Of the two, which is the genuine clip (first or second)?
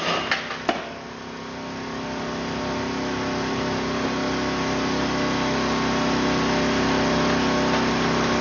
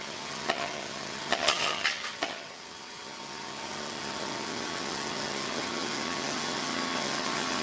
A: first